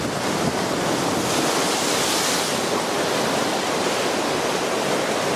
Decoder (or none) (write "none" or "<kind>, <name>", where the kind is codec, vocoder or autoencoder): none